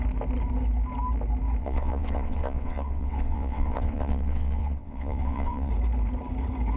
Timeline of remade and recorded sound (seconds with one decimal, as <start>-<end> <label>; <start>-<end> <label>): 0.0-1.6 recorded; 1.6-5.7 remade; 5.7-6.8 recorded

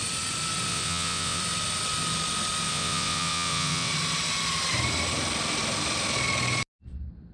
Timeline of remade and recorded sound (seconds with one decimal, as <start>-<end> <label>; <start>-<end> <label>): 0.0-0.7 recorded; 0.7-1.4 remade; 1.4-2.7 recorded; 2.7-3.9 remade; 3.9-7.3 recorded

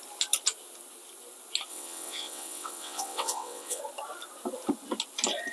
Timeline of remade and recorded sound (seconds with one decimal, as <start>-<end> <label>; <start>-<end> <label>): 0.0-1.7 recorded; 1.7-3.8 remade; 3.8-5.5 recorded

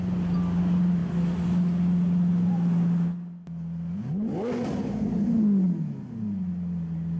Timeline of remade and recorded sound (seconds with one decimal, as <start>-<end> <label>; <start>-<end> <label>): 0.0-7.2 recorded

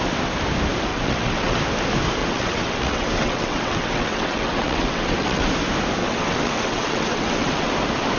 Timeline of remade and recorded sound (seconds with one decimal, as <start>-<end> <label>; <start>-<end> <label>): 0.0-0.9 recorded; 0.9-1.6 remade; 1.6-2.2 recorded; 2.2-5.5 remade; 5.5-6.0 recorded; 6.0-7.7 remade; 7.7-8.2 recorded

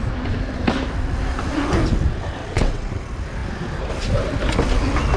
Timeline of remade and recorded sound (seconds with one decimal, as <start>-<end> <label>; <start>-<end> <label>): 0.0-2.4 recorded; 2.4-3.0 remade; 3.0-5.2 recorded